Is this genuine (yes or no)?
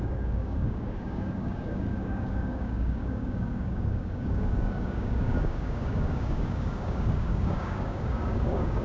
no